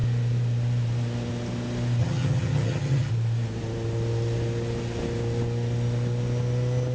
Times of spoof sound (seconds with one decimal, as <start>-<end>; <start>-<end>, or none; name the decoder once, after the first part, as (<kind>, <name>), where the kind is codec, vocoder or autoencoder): 2.0-3.1 (vocoder, HiFi-GAN)